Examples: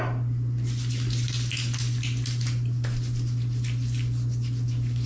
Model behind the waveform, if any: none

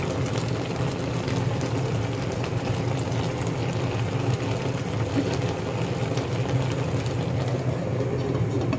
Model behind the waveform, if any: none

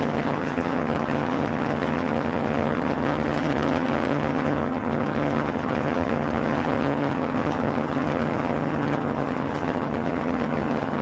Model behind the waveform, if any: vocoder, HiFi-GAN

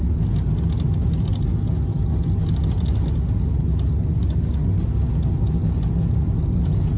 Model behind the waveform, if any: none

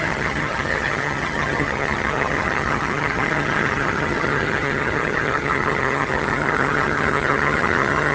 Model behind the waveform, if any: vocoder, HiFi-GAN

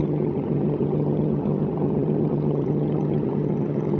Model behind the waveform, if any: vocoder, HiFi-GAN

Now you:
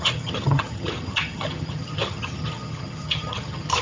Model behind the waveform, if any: vocoder, HiFi-GAN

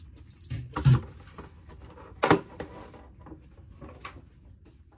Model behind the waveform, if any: none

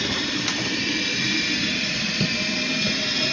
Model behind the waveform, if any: none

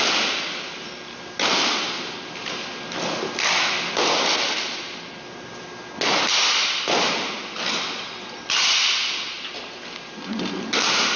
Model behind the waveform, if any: none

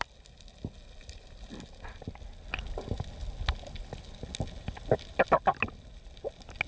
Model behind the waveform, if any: none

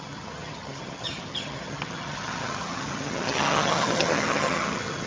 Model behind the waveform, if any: vocoder, HiFi-GAN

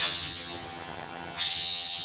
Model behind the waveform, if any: vocoder, HiFi-GAN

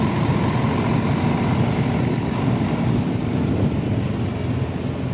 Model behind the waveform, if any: none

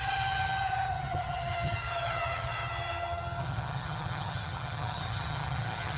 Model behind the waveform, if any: vocoder, HiFi-GAN